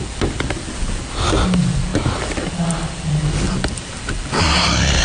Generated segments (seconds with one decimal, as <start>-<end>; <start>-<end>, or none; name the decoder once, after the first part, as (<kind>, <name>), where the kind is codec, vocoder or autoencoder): none

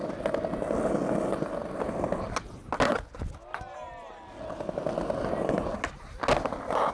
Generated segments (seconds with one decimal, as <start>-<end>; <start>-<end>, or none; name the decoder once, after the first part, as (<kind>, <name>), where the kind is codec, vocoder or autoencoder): none

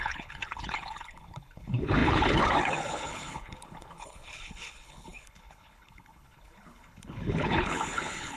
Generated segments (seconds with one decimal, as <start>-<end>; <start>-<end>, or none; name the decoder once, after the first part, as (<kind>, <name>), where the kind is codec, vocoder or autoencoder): 0.0-8.4 (codec, HILCodec)

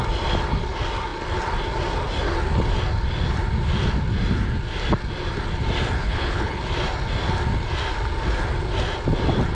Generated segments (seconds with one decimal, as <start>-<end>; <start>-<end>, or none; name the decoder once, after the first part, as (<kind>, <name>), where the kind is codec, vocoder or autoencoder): 6.0-6.6 (codec, HILCodec)